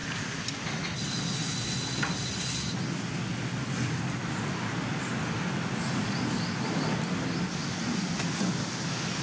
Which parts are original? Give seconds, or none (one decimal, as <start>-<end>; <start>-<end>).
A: 0.0-9.2